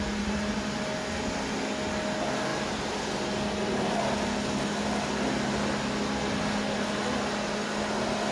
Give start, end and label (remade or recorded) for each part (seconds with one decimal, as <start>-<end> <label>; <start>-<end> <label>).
0.0-8.3 recorded